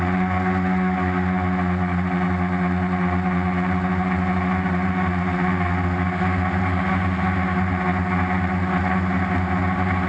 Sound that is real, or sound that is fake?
real